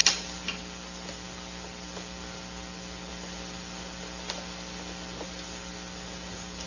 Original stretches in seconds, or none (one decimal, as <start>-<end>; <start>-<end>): 0.0-6.7